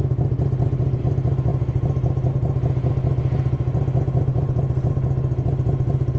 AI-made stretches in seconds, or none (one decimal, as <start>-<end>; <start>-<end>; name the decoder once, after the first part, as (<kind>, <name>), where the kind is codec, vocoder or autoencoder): none

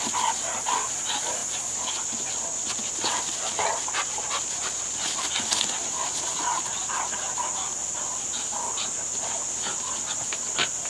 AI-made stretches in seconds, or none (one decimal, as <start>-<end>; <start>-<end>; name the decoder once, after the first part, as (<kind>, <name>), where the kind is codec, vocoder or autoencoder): none

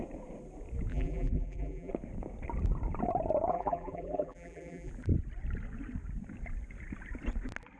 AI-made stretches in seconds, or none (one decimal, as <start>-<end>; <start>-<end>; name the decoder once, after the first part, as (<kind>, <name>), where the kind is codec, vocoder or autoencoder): 0.9-1.9 (vocoder, BigVGAN v2); 3.5-4.9

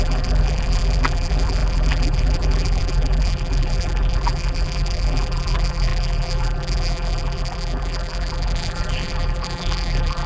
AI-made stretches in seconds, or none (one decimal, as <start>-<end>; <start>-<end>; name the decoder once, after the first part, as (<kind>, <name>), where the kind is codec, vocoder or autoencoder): 0.0-10.3 (vocoder, BigVGAN v2)

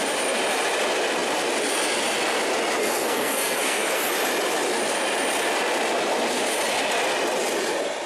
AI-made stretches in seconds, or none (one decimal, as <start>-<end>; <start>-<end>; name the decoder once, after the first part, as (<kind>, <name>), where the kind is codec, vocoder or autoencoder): 2.8-4.1 (codec, SNAC)